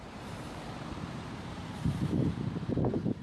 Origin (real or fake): fake